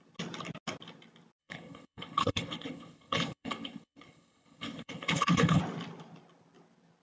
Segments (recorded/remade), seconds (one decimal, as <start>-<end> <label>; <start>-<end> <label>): 0.0-1.4 recorded; 1.4-5.6 remade; 5.6-7.0 recorded